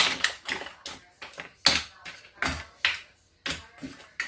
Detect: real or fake real